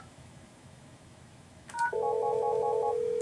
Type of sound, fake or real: fake